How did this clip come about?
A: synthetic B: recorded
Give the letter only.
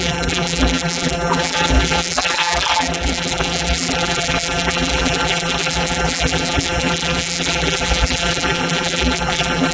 A